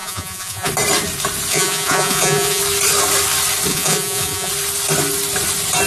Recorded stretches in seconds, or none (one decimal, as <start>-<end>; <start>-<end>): 0.7-1.5; 2.6-3.7; 4.5-5.9

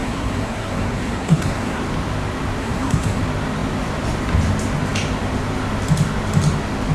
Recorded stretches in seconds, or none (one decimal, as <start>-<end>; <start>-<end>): 1.8-2.6; 3.2-6.9

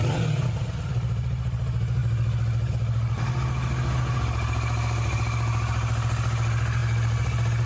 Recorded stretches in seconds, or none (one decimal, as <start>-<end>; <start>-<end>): 0.0-7.7

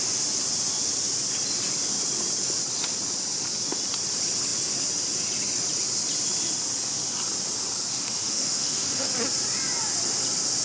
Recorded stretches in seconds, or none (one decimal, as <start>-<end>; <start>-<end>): 0.0-7.9; 9.1-10.6

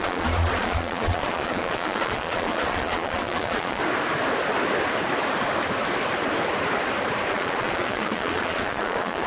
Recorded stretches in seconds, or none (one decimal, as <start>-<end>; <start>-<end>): 3.8-7.3

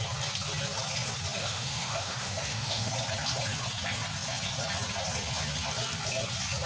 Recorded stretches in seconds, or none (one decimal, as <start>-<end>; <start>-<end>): 0.0-1.4; 2.9-6.7

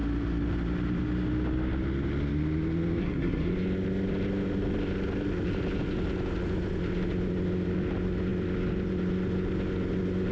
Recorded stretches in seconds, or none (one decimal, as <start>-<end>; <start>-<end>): 0.0-3.0; 3.5-10.3

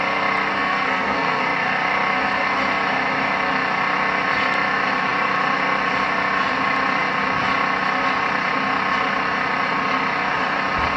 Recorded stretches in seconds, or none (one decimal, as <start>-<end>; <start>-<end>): 0.0-0.5; 1.4-11.0